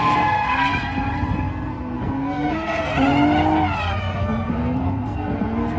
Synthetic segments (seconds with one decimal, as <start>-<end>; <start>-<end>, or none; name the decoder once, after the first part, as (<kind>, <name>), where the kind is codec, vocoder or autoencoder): 0.0-0.7 (codec, SNAC); 1.5-2.9; 3.9-5.8